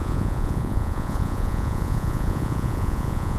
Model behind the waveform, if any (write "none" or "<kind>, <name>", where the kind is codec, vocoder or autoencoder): vocoder, Vocos